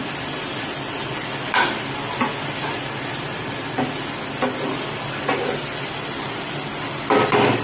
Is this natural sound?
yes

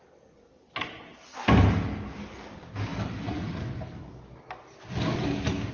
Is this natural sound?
yes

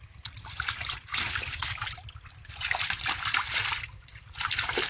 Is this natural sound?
yes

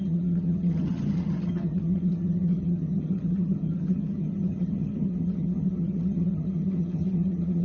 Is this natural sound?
no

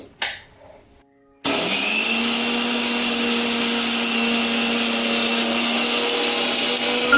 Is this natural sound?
yes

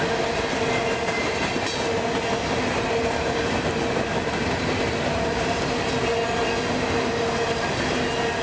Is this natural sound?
yes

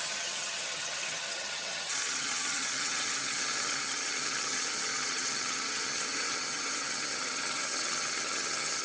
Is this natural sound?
no